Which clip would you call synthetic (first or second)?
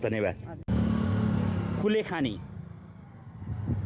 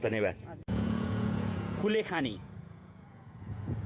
second